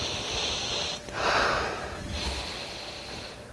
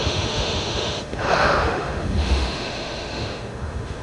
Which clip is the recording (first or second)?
first